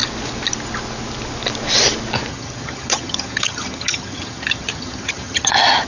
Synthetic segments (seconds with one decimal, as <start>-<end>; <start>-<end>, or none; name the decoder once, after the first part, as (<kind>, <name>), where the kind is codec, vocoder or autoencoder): 2.3-5.9 (vocoder, HiFi-GAN)